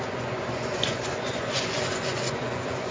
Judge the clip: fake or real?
fake